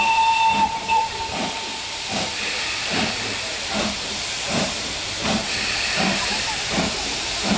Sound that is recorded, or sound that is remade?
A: remade